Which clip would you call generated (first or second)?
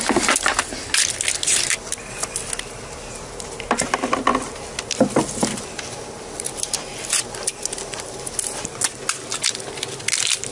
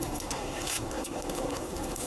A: second